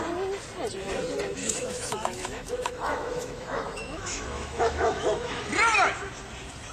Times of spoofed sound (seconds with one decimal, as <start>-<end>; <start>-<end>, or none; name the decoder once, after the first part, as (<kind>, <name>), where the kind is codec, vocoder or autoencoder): 1.4-5.4 (autoencoder, DAC-VAE)